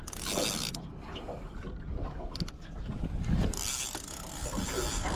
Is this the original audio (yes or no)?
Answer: yes